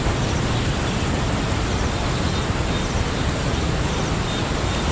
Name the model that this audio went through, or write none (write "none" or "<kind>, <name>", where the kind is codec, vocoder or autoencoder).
none